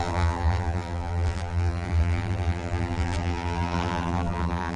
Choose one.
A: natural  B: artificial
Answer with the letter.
B